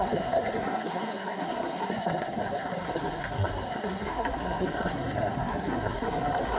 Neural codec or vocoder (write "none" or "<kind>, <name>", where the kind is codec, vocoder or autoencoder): codec, SNAC